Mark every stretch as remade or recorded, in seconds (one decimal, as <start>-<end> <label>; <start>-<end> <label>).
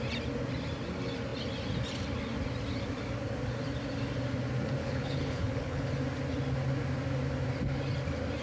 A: 0.0-4.8 recorded; 4.8-5.9 remade; 5.9-8.4 recorded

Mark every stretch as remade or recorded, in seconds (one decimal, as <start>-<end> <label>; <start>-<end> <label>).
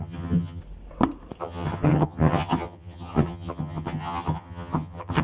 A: 0.0-0.6 remade; 0.6-1.4 recorded; 1.4-5.2 remade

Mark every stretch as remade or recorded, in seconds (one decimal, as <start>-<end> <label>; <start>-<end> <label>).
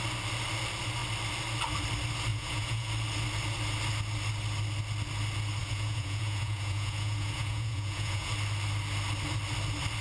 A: 0.0-2.3 recorded; 2.3-2.9 remade; 2.9-5.6 recorded; 5.6-8.3 remade; 8.3-10.0 recorded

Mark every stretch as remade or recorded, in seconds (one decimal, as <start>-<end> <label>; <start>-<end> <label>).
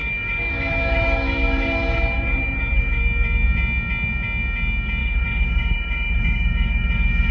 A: 0.0-3.0 remade; 3.0-5.0 recorded; 5.0-7.3 remade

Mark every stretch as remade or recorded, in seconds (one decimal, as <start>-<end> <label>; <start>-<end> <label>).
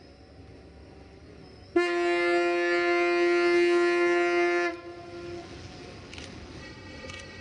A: 0.0-6.6 recorded; 6.6-7.4 remade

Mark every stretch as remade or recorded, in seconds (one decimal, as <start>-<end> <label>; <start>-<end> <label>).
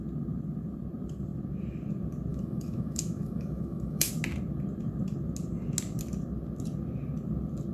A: 0.0-2.3 recorded; 2.3-4.1 remade; 4.1-7.7 recorded